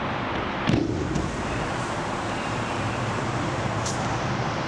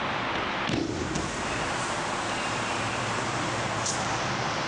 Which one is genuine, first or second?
second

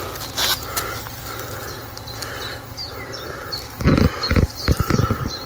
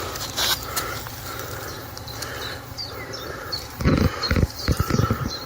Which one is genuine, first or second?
first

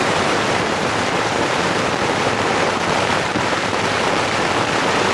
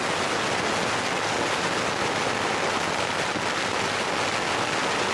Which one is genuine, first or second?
second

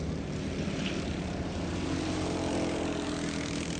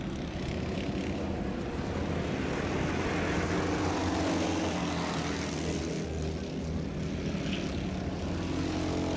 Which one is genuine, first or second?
second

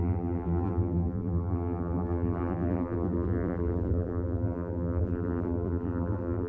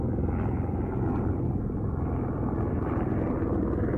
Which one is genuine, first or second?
second